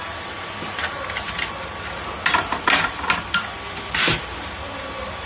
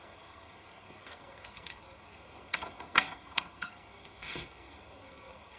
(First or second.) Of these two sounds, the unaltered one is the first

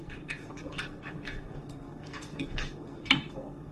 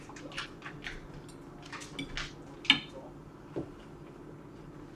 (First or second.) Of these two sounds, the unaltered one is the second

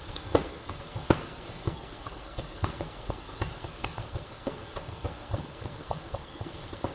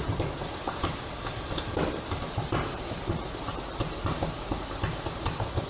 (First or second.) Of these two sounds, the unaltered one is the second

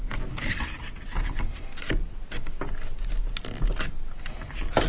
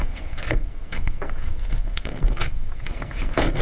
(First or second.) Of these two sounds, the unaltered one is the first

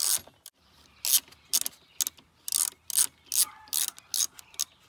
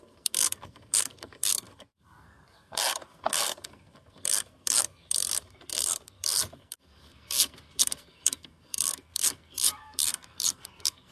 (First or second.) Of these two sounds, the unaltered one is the first